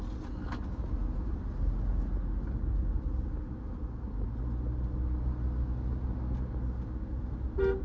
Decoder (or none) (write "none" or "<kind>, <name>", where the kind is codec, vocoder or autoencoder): none